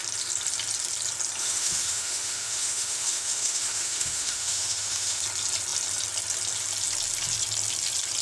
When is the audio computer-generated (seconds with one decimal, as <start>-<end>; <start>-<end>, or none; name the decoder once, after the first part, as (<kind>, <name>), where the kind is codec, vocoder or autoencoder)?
1.4-5.2 (autoencoder, DAC-VAE)